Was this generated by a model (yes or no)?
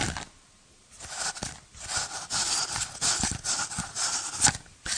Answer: no